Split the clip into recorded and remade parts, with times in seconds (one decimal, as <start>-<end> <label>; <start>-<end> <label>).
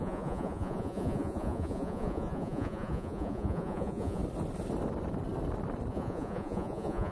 0.0-4.2 remade; 4.2-5.9 recorded; 5.9-7.1 remade